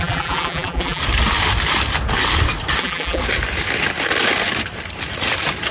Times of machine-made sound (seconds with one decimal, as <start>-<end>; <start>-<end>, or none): 0.0-1.0; 2.8-3.2